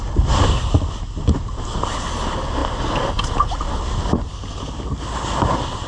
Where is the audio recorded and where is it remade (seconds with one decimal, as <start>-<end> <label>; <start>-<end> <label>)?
0.0-5.9 recorded